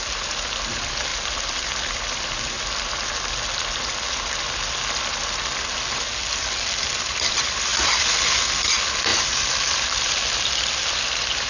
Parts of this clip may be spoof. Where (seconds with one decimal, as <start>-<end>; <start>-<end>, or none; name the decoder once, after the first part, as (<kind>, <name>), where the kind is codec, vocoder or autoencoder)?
1.1-3.0 (vocoder, BigVGAN v2); 7.7-8.7; 9.1-11.0

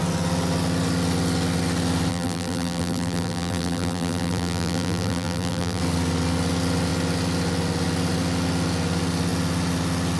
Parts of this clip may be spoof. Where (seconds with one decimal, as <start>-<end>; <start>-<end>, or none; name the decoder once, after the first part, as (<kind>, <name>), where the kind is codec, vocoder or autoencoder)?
2.1-5.8 (vocoder, BigVGAN v2)

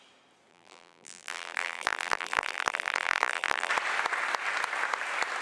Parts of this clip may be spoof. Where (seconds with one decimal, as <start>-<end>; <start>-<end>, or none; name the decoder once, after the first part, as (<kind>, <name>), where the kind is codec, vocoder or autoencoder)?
0.5-3.7 (vocoder, BigVGAN v2)

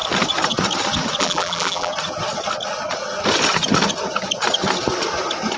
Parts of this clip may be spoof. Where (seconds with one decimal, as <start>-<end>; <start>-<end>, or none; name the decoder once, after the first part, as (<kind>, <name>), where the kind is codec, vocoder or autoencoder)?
1.2-1.9 (vocoder, BigVGAN v2)

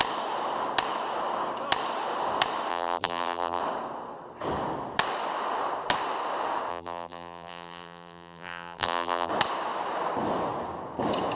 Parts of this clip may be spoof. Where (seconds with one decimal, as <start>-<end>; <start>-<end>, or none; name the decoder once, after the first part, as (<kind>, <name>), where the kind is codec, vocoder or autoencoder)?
2.7-3.6 (vocoder, BigVGAN v2); 6.7-9.3

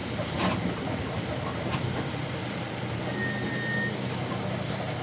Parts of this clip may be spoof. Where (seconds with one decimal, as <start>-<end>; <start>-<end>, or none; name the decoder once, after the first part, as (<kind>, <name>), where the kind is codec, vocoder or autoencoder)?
0.0-3.0 (vocoder, BigVGAN v2)